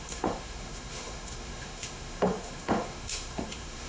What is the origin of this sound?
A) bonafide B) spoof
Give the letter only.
B